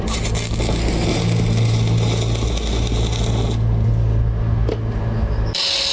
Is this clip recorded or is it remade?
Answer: recorded